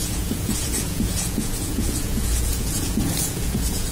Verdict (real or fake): fake